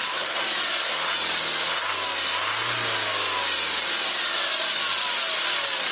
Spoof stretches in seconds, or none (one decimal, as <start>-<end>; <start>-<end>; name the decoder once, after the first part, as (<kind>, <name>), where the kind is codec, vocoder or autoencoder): none